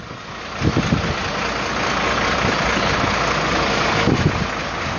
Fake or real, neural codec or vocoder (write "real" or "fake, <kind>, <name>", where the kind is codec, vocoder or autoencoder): real